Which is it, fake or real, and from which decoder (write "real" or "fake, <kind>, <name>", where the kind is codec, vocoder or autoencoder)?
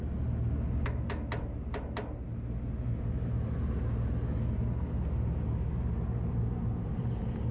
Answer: real